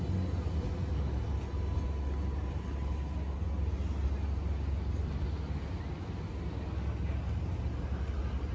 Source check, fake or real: real